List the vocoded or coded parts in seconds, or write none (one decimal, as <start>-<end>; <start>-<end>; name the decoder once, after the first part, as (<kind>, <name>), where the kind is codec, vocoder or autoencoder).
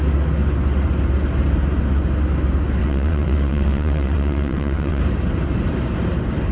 2.8-5.0 (vocoder, WaveNeXt)